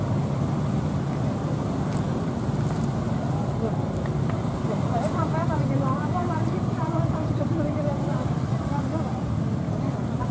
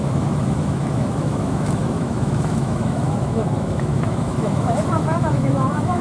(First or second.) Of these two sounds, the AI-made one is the second